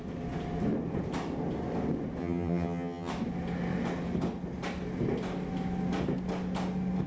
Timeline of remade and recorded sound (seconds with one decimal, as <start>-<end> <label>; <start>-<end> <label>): 0.0-2.2 recorded; 2.2-3.1 remade; 3.1-7.1 recorded